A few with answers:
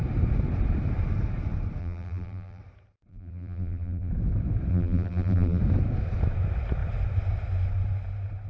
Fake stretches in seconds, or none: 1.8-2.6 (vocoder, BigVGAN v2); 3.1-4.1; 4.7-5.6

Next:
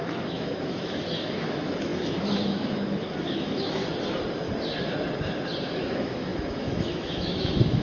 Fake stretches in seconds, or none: 0.0-3.8 (autoencoder, DAC-VAE); 5.6-7.8

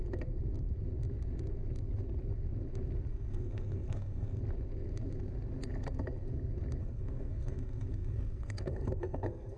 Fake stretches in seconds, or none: 3.1-4.4 (codec, SNAC); 6.8-9.6